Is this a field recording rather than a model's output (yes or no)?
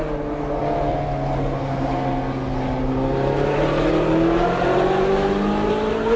yes